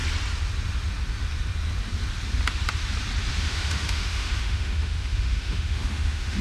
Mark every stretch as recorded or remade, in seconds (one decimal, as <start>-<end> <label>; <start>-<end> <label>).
0.0-3.3 recorded; 3.3-6.4 remade